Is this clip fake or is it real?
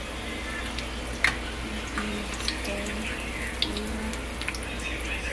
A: real